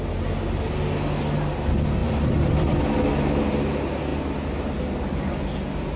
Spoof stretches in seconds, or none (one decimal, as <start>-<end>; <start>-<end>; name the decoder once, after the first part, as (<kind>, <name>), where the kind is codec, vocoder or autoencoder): 2.0-2.8 (vocoder, BigVGAN v2)